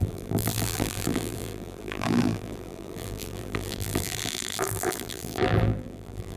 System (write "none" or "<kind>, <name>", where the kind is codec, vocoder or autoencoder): vocoder, BigVGAN v2